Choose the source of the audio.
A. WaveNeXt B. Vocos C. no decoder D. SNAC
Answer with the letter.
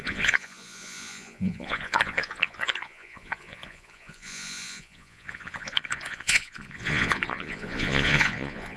B